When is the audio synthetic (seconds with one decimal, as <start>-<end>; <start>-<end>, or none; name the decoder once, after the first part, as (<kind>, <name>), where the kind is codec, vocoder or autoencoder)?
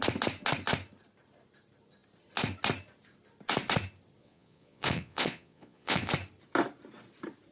4.2-6.1 (vocoder, Vocos)